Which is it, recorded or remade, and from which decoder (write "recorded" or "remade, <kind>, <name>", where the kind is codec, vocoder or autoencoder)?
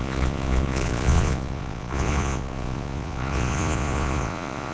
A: remade, vocoder, Vocos